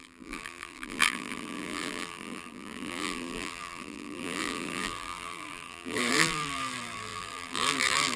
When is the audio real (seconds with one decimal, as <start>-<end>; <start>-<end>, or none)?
none

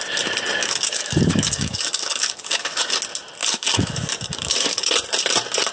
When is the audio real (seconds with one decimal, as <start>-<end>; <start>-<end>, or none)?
0.0-0.6; 2.9-3.4; 4.9-5.7

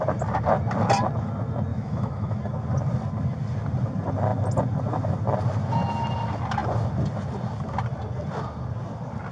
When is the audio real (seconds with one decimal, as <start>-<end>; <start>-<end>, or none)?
0.0-1.7; 2.4-9.3

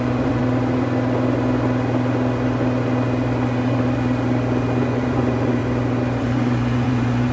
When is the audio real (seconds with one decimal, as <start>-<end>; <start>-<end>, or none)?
0.4-4.8; 5.6-6.2

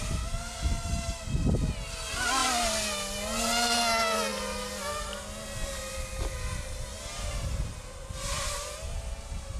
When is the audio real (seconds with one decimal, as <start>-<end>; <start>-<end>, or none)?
0.0-9.6

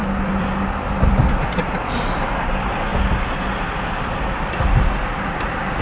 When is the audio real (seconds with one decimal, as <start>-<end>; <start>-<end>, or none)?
2.9-3.9